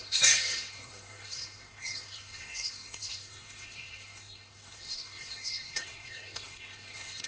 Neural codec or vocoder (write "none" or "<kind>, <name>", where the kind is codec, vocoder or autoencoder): codec, SNAC